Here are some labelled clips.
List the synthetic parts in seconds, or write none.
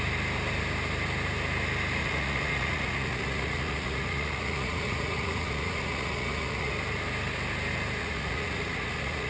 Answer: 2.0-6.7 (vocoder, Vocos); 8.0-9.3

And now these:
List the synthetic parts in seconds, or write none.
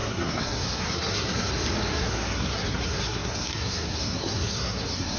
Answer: 0.0-1.5 (codec, SNAC); 1.9-5.2